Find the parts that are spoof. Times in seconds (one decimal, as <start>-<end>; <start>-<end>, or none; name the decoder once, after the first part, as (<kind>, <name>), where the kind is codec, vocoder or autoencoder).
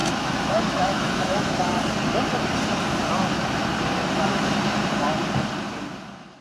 0.0-1.6 (autoencoder, DAC-VAE)